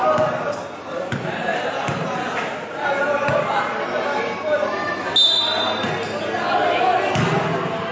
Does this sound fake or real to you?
real